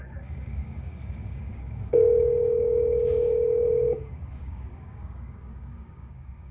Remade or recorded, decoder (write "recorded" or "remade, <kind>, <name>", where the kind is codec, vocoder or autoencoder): remade, codec, DAC